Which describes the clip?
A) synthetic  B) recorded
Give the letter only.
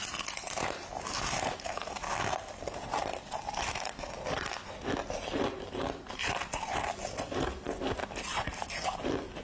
B